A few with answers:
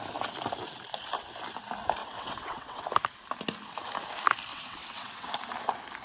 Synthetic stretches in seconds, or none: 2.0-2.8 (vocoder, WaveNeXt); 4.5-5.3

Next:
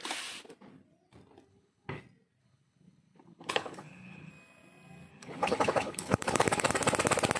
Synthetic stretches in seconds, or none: 1.5-2.0 (codec, HILCodec); 2.4-4.3; 5.1-6.7

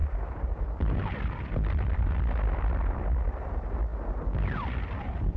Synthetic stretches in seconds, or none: 0.0-3.2 (vocoder, BigVGAN v2)

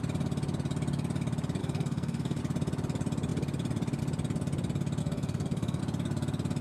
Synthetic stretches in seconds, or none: 1.6-2.4 (codec, SNAC); 5.0-5.8

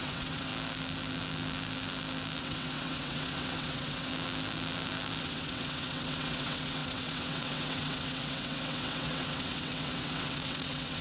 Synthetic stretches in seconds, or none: 0.0-0.5 (vocoder, WaveNeXt); 2.4-4.1; 5.2-11.0

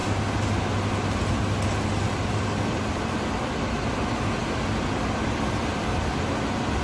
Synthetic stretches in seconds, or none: none

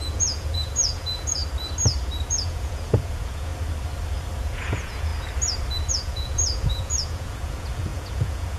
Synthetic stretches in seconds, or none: 0.0-1.4 (vocoder, Vocos); 2.3-3.5; 4.4-5.1; 5.9-8.6